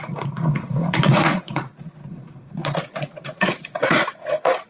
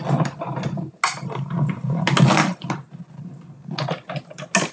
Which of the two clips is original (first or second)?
second